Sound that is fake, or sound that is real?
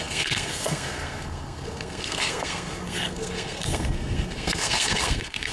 fake